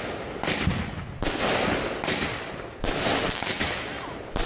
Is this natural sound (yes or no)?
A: yes